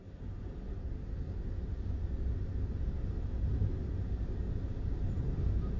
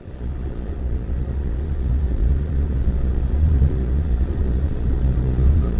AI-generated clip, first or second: second